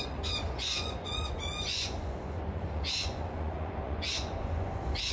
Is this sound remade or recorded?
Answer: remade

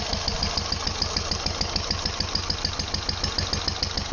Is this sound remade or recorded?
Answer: recorded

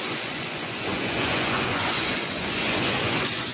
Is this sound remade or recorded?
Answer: remade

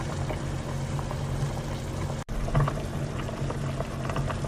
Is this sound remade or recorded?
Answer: recorded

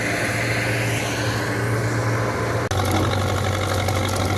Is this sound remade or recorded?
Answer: recorded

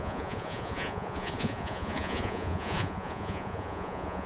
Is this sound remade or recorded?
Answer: remade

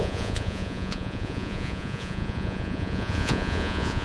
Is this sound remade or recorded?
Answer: remade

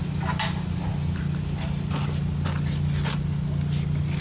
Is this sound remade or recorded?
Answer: recorded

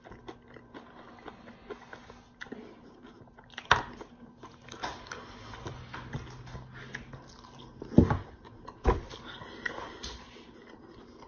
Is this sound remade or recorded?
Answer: recorded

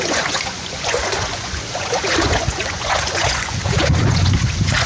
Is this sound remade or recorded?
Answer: remade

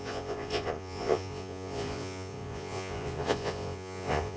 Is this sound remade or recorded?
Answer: remade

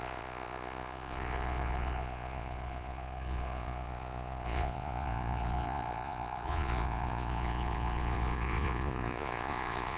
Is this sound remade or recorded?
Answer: remade